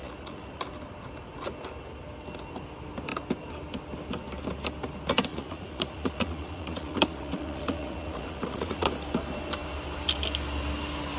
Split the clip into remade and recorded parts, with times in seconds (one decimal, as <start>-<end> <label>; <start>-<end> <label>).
0.0-0.6 remade; 0.6-5.3 recorded; 5.3-8.9 remade; 8.9-11.2 recorded